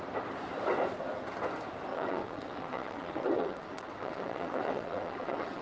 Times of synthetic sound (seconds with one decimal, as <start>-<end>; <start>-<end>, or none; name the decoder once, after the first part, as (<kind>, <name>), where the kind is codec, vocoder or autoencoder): 1.9-5.6 (vocoder, WaveNeXt)